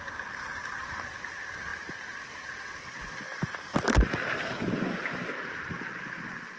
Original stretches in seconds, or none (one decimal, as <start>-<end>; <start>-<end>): 0.0-1.7; 2.7-3.3; 5.6-6.6